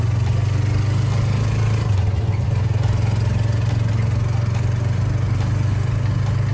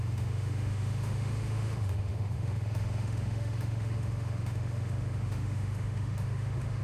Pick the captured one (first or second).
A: first